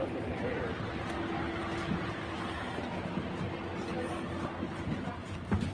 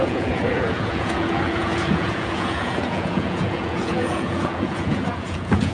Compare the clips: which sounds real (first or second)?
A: first